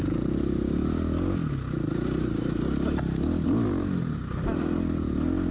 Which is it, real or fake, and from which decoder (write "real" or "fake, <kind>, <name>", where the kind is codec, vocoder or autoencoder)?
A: real